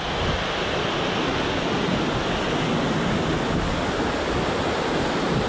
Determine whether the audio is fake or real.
real